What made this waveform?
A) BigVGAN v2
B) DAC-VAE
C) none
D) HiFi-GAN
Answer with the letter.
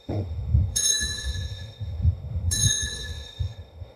B